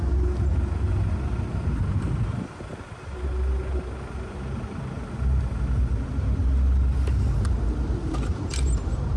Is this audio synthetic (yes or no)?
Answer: no